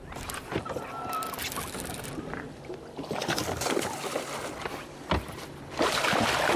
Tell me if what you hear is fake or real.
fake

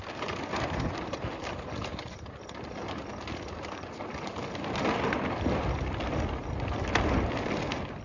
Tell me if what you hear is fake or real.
real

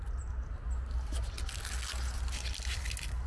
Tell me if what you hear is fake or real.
real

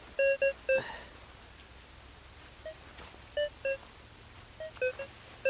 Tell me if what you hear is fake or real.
real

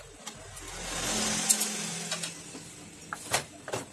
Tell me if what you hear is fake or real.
real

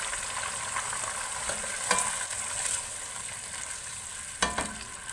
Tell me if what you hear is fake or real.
real